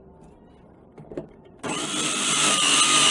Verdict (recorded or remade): recorded